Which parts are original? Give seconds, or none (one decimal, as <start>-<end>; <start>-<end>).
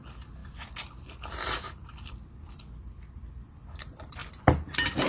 0.0-5.1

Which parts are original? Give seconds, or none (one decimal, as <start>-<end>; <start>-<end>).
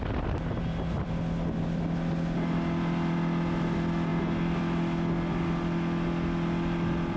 0.0-7.2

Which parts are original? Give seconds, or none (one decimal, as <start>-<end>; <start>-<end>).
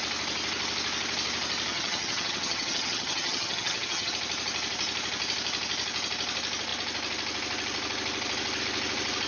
0.0-1.7; 4.1-9.3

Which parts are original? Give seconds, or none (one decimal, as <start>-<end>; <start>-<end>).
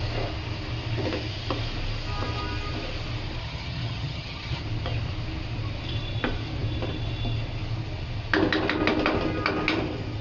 0.0-3.4; 4.6-10.2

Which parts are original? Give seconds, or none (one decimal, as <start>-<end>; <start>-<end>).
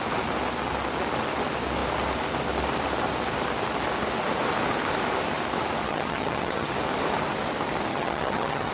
0.0-5.8; 6.7-7.9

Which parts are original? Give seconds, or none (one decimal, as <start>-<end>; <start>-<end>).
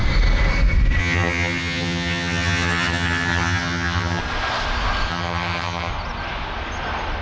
0.0-1.0; 4.2-5.1; 5.9-7.2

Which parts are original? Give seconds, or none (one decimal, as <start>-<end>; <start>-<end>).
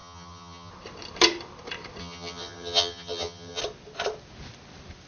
0.7-2.0; 3.6-5.1